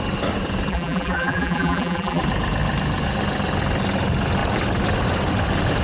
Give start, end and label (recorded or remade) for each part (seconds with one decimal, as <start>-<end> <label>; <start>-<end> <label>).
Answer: 0.0-0.7 recorded; 0.7-2.2 remade; 2.2-5.8 recorded